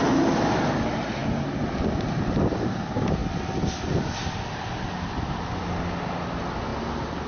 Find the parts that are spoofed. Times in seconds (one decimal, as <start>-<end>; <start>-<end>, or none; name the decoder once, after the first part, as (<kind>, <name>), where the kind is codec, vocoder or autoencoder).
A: none